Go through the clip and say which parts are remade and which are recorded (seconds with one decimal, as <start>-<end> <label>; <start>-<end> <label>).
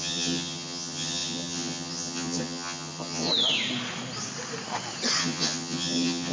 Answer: 0.0-3.3 remade; 3.3-5.2 recorded; 5.2-6.3 remade